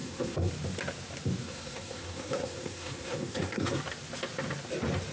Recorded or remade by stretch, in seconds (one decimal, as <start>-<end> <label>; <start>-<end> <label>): 0.0-0.5 remade; 0.5-1.4 recorded; 1.4-3.8 remade; 3.8-5.1 recorded